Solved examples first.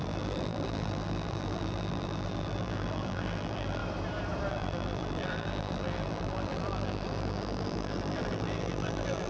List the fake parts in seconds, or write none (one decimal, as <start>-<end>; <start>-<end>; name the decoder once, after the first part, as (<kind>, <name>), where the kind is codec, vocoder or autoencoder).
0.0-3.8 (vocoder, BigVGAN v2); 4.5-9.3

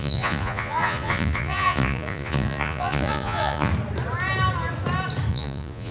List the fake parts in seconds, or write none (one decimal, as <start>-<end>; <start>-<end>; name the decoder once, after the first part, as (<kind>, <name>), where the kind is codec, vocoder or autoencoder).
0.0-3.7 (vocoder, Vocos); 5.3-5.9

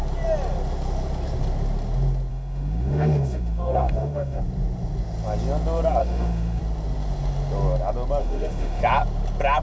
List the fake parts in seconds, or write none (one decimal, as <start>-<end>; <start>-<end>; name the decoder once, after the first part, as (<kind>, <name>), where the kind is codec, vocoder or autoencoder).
2.3-4.4 (autoencoder, DAC-VAE); 6.0-6.6; 8.2-8.8

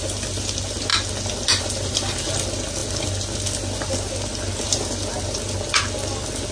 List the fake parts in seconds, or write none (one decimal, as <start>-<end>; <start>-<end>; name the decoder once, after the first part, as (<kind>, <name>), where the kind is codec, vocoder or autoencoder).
none

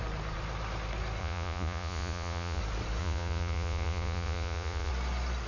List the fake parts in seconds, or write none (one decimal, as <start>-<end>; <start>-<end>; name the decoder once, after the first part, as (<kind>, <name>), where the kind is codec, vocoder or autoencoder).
1.2-2.6 (vocoder, Vocos); 3.0-4.9

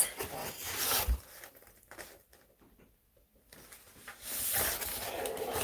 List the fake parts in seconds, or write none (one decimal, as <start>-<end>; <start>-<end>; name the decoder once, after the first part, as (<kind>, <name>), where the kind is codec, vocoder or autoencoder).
none